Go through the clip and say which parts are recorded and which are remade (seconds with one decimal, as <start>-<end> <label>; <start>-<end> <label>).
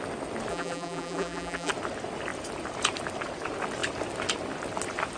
0.0-0.5 recorded; 0.5-1.7 remade; 1.7-5.2 recorded